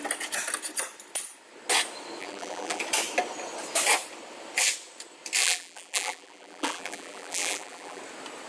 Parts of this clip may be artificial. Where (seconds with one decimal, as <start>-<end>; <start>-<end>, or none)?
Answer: 2.2-2.8; 5.4-8.0